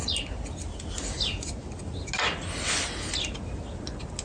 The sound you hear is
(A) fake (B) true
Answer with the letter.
B